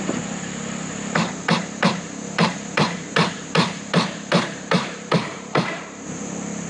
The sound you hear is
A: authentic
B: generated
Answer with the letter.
B